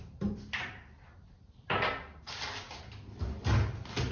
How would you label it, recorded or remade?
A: recorded